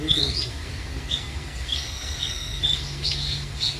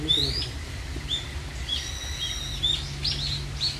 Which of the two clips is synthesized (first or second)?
first